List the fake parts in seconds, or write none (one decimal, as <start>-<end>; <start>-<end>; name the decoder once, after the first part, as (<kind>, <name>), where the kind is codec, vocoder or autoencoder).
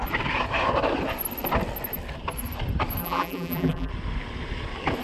3.0-3.9 (vocoder, BigVGAN v2)